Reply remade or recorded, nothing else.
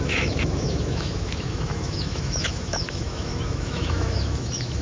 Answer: remade